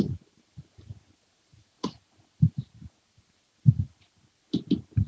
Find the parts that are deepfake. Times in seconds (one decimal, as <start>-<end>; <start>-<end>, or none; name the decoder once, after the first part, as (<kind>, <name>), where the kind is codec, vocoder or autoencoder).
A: none